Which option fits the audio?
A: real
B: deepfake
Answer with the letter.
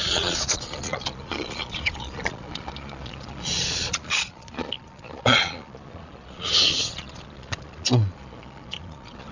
B